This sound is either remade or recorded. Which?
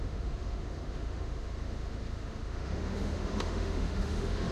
remade